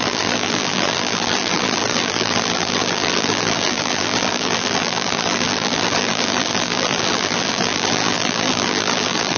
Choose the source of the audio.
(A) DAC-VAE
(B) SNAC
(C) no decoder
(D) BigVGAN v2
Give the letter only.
D